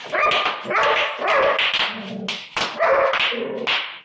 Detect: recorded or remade recorded